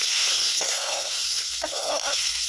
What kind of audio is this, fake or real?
fake